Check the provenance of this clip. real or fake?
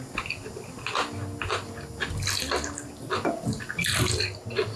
real